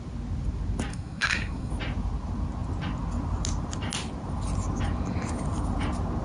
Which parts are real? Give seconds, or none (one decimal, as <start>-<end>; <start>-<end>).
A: 0.0-0.9; 1.7-6.2